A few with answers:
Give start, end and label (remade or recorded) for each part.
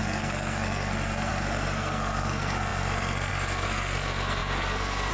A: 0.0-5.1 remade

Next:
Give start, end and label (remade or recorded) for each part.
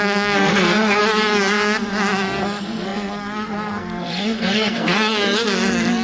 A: 0.0-1.0 remade; 1.0-2.4 recorded; 2.4-6.0 remade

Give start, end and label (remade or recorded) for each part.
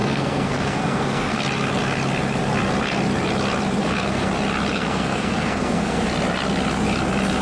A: 0.0-1.4 remade; 1.4-3.8 recorded; 3.8-4.3 remade; 4.3-4.7 recorded; 4.7-6.0 remade; 6.0-7.4 recorded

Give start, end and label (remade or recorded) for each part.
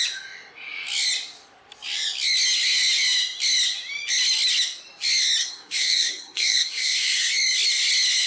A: 0.0-5.4 recorded; 5.4-7.3 remade; 7.3-8.3 recorded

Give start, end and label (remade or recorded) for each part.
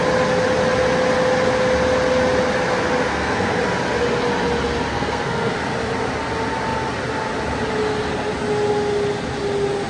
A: 0.0-3.1 recorded; 3.1-3.6 remade; 3.6-4.9 recorded; 4.9-5.5 remade; 5.5-9.9 recorded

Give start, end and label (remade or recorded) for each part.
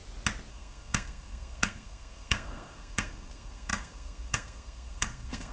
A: 0.0-0.5 recorded; 0.5-5.5 remade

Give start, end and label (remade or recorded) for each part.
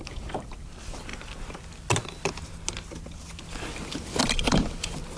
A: 0.0-5.2 recorded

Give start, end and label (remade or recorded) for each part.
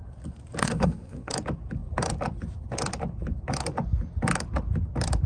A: 0.0-0.6 recorded; 0.6-1.3 remade; 1.3-5.3 recorded